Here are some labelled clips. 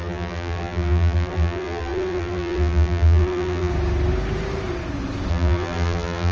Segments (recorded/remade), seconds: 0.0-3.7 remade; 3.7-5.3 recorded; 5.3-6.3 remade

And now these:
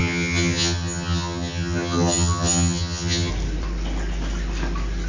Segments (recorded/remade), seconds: 0.0-3.3 remade; 3.3-5.1 recorded

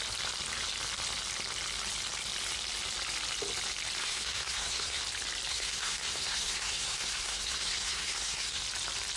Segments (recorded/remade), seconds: 0.0-4.0 recorded; 4.0-5.0 remade; 5.0-5.5 recorded; 5.5-8.6 remade; 8.6-9.2 recorded

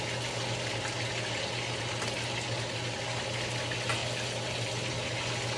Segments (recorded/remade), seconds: 0.0-5.6 recorded